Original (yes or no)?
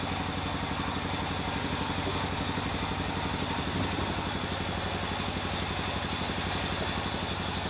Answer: yes